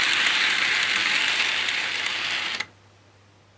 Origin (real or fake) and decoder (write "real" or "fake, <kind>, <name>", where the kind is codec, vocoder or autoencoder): real